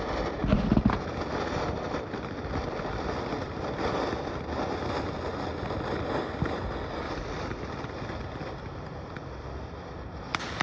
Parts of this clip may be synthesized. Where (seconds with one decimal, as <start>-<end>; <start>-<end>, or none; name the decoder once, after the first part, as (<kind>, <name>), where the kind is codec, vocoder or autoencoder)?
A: none